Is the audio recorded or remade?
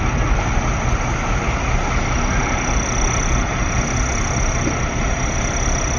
recorded